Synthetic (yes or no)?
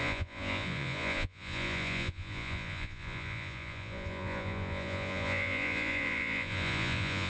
yes